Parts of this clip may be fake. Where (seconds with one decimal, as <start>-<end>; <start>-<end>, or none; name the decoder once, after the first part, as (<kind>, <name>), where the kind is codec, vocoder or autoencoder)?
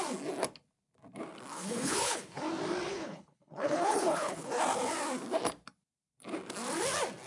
1.5-2.4 (codec, HILCodec); 2.9-4.5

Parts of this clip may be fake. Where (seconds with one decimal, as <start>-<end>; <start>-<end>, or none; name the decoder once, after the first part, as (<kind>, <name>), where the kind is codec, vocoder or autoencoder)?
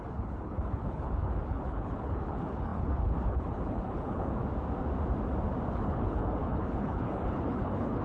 0.0-4.4 (codec, HILCodec); 5.7-8.0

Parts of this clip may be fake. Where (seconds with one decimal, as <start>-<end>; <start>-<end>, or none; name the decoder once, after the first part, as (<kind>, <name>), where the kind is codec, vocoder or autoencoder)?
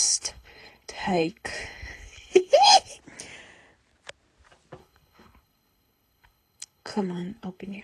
0.0-3.0 (codec, HILCodec); 4.8-7.8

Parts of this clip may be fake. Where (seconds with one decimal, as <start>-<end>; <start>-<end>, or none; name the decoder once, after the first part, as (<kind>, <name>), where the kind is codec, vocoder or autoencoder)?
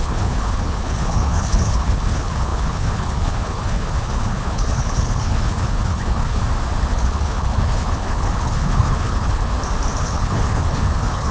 0.0-6.4 (codec, HILCodec); 6.9-9.5; 10.0-11.3